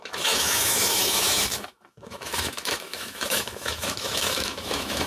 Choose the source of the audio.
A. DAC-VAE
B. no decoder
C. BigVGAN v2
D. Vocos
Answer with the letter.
A